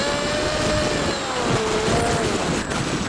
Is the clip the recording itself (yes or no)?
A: yes